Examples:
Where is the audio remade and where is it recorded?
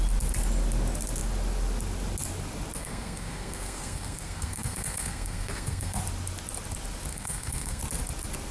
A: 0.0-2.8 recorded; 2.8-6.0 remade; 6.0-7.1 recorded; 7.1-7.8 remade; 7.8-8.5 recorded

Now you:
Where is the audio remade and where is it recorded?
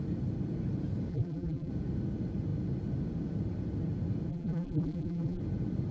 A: 0.0-1.1 recorded; 1.1-1.7 remade; 1.7-4.3 recorded; 4.3-5.4 remade; 5.4-5.9 recorded